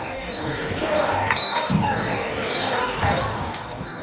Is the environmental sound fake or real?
fake